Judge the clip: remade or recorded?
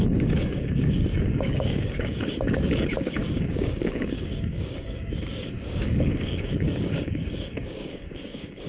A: remade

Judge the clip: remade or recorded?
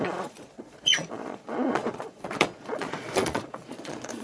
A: remade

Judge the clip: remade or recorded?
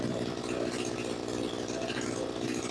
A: recorded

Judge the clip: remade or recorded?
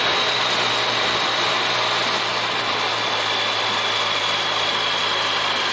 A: recorded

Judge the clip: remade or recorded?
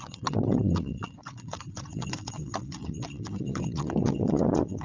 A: remade